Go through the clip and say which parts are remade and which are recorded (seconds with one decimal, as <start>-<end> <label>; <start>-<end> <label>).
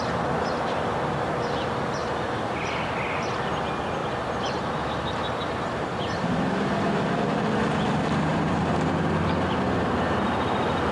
0.0-4.0 recorded; 4.0-6.7 remade; 6.7-8.3 recorded; 8.3-8.9 remade; 8.9-10.9 recorded